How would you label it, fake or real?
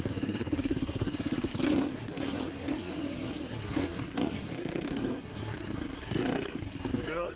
fake